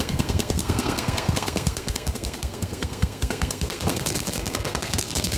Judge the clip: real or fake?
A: fake